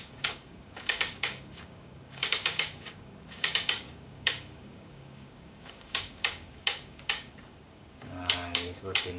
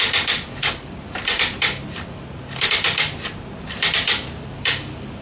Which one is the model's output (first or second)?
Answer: first